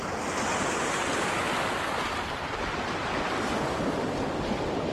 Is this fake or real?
real